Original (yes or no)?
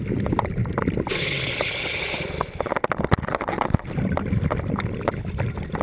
no